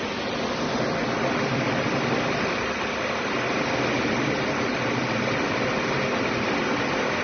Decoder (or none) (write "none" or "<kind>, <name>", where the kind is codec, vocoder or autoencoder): none